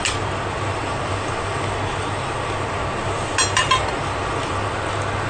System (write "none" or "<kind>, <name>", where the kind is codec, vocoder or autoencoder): none